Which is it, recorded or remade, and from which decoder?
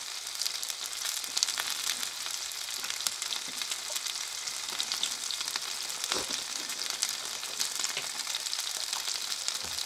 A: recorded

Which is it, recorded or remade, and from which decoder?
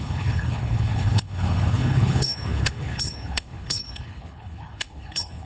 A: remade, codec, HILCodec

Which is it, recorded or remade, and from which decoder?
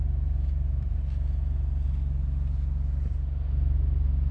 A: recorded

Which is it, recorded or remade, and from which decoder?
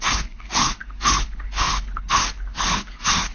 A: remade, codec, HILCodec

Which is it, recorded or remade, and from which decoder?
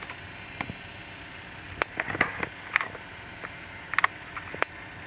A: recorded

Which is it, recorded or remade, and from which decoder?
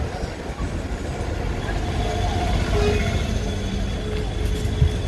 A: recorded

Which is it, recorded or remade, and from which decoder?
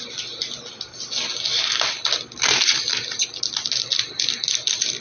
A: recorded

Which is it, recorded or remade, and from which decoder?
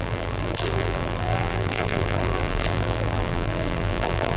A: remade, vocoder, BigVGAN v2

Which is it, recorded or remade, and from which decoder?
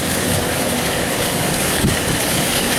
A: remade, codec, DAC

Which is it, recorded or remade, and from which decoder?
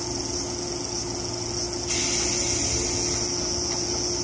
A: recorded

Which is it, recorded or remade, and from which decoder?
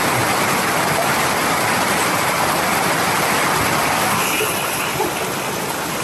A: recorded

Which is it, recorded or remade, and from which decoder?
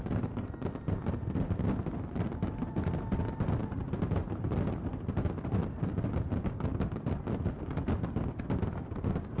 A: recorded